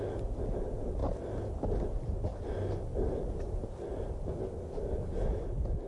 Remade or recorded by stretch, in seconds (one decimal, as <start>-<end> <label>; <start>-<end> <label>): 0.0-5.9 recorded